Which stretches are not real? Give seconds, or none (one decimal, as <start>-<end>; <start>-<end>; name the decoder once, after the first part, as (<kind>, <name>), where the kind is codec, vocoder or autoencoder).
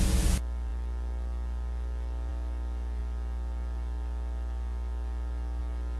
none